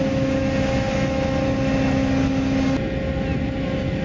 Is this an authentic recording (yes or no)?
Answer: yes